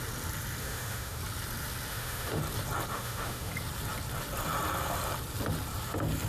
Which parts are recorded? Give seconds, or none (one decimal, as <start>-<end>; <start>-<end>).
0.0-0.6; 1.2-1.9; 2.4-2.9; 3.5-6.3